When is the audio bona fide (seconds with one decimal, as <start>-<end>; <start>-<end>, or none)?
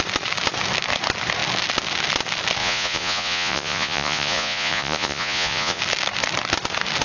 0.0-2.6; 5.8-7.0